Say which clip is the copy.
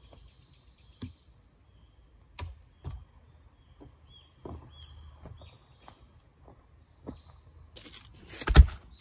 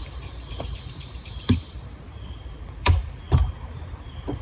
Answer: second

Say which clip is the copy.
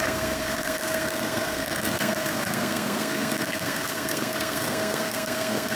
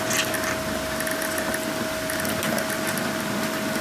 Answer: first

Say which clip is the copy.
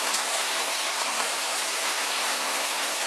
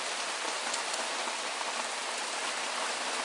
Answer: first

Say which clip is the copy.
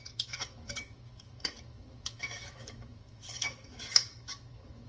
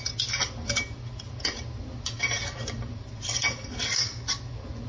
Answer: first